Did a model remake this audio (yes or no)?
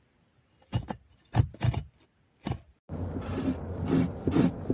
no